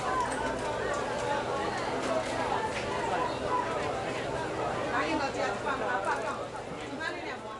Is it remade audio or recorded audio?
recorded